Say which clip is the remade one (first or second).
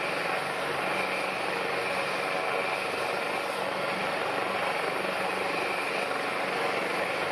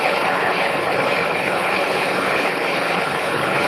second